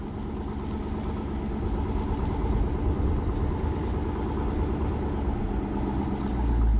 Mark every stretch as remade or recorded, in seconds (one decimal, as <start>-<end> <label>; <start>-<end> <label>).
0.0-6.8 recorded